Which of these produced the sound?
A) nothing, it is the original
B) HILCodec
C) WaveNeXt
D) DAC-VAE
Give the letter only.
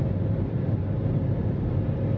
A